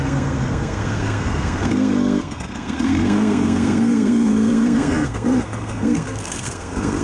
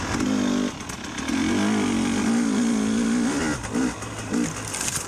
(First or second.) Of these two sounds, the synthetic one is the first